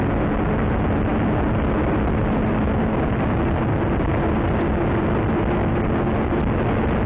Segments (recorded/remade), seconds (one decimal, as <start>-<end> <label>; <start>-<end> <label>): 0.0-7.1 recorded